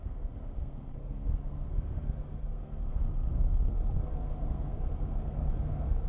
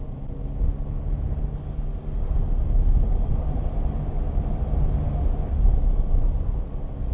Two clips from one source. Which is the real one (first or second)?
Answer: second